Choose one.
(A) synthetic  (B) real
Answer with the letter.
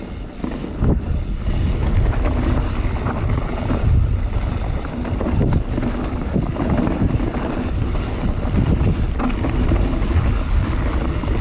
B